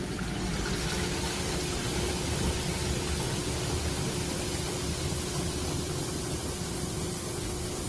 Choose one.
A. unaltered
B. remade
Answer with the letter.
A